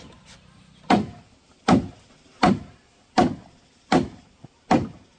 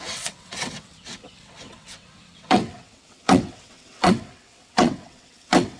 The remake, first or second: second